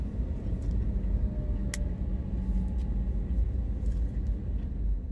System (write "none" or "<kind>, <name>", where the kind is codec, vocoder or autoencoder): none